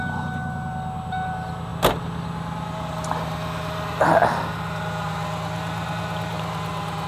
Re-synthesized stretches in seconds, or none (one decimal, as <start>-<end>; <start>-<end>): none